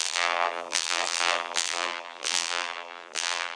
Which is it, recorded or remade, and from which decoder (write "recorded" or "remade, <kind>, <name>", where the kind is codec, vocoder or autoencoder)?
remade, vocoder, BigVGAN v2